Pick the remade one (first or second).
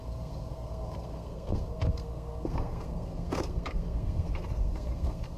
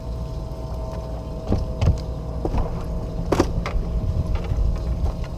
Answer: first